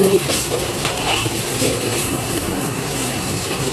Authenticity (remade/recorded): remade